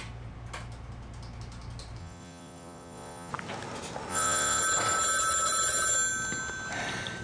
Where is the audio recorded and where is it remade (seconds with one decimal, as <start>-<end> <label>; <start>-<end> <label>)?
0.0-2.0 recorded; 2.0-3.3 remade; 3.3-4.1 recorded; 4.1-4.6 remade; 4.6-7.2 recorded